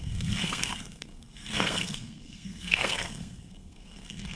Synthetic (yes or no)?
yes